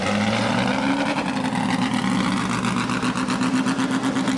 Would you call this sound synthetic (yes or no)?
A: no